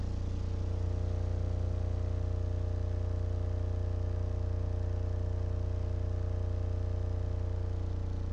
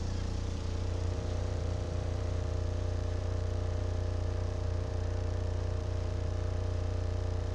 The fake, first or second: second